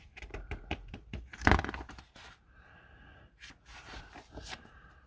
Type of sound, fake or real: fake